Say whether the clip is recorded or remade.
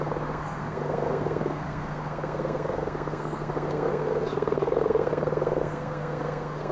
remade